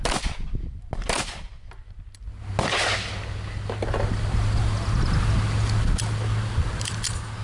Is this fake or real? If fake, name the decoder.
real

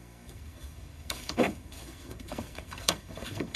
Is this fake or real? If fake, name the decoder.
fake, codec, SNAC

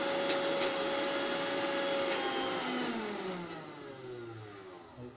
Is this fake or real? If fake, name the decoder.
real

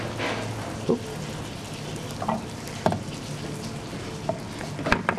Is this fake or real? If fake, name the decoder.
real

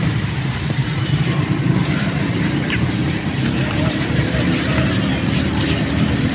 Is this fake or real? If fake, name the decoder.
fake, vocoder, BigVGAN v2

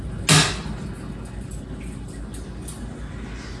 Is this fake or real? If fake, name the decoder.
real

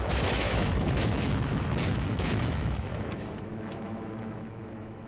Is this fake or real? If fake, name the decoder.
fake, autoencoder, DAC-VAE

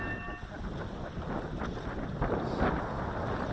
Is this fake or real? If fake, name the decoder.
real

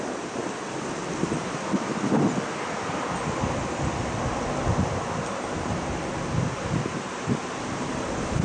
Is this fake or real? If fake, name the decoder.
real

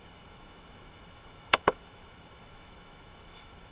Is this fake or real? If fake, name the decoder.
fake, autoencoder, DAC-VAE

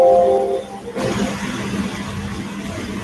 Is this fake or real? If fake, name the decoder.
real